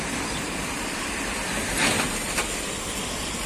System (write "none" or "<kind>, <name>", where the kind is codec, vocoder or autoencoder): vocoder, BigVGAN v2